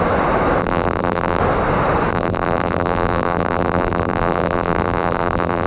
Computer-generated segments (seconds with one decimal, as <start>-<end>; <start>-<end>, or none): 0.6-1.4; 2.1-5.7